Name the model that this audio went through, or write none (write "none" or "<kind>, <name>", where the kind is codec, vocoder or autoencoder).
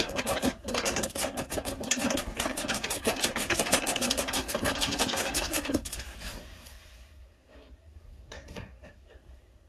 codec, SNAC